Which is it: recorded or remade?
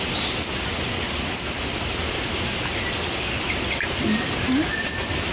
recorded